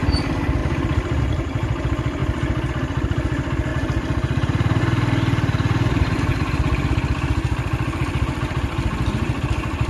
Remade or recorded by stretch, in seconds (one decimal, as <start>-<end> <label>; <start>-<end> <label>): 0.0-0.6 recorded; 0.6-1.2 remade; 1.2-2.2 recorded; 2.2-2.7 remade; 2.7-3.7 recorded; 3.7-4.8 remade; 4.8-9.9 recorded

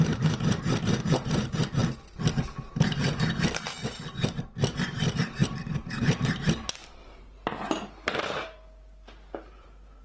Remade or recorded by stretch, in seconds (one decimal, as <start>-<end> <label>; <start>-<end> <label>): 0.0-1.8 remade; 1.8-2.8 recorded; 2.8-10.0 remade

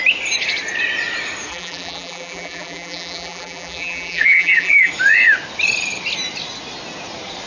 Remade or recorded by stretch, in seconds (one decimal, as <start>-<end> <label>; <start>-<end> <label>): 0.0-1.5 recorded; 1.5-4.9 remade; 4.9-7.5 recorded

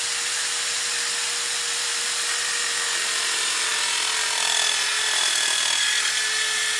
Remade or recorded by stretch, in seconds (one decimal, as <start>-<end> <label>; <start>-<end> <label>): 0.0-1.2 recorded; 1.2-2.5 remade; 2.5-6.8 recorded

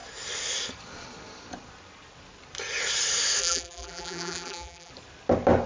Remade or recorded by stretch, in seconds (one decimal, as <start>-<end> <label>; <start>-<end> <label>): 0.0-3.4 recorded; 3.4-4.9 remade; 4.9-5.7 recorded

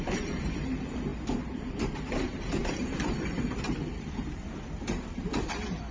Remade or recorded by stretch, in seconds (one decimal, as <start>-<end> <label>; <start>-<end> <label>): 0.0-1.1 remade; 1.1-1.7 recorded; 1.7-5.9 remade

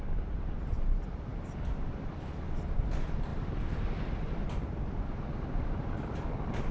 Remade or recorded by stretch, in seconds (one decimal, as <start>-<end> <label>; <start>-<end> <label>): 0.0-1.3 recorded; 1.3-2.1 remade; 2.1-3.3 recorded; 3.3-5.0 remade; 5.0-6.7 recorded

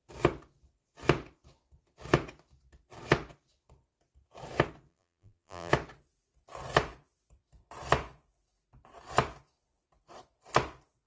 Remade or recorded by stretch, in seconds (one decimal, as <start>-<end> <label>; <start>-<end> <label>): 0.0-4.9 recorded; 4.9-5.7 remade; 5.7-11.1 recorded